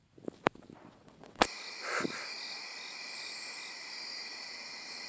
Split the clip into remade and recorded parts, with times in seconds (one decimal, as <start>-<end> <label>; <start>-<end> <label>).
0.0-0.9 recorded; 0.9-1.4 remade; 1.4-4.4 recorded; 4.4-5.1 remade